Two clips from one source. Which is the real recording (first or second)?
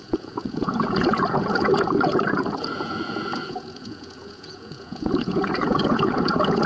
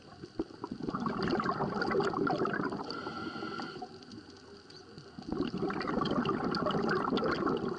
second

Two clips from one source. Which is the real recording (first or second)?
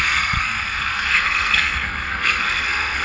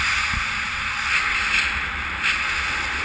second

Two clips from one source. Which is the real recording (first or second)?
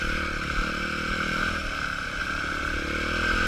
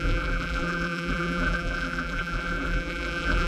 first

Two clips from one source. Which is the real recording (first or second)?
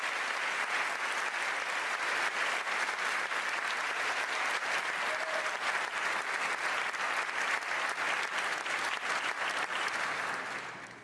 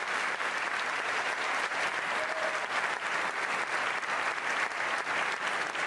first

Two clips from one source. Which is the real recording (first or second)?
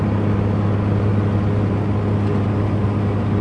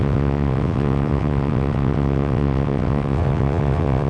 first